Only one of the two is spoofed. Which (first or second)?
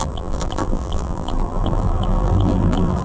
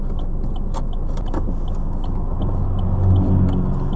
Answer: first